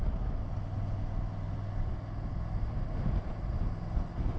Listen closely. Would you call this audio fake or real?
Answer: real